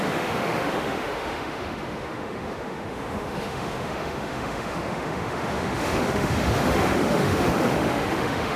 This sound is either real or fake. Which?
fake